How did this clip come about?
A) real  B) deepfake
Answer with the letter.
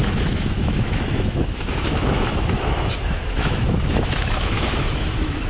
B